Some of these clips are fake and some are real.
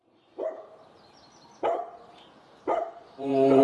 fake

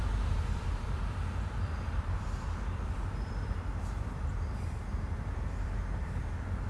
fake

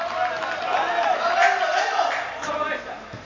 real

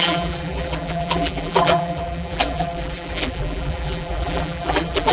fake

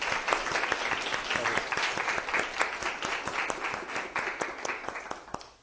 real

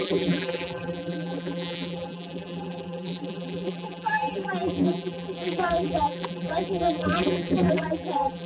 fake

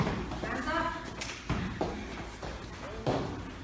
real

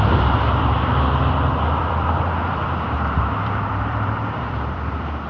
fake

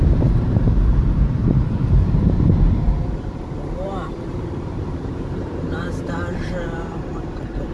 fake